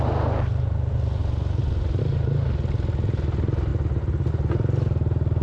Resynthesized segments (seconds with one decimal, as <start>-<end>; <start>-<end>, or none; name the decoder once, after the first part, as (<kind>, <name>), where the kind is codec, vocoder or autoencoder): none